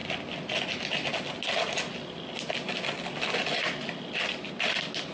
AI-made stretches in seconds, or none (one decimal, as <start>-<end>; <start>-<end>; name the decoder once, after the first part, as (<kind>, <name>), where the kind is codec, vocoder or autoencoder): none